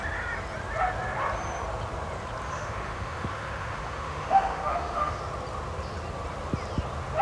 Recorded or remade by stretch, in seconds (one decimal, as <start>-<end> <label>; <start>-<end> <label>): 0.0-2.5 recorded; 2.5-5.2 remade; 5.2-7.2 recorded